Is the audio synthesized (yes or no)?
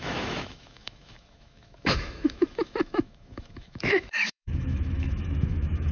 yes